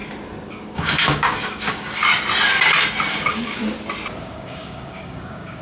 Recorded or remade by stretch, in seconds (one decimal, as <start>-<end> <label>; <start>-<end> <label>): 0.0-0.5 recorded; 0.5-2.0 remade; 2.0-3.1 recorded; 3.1-3.6 remade; 3.6-4.2 recorded; 4.2-5.6 remade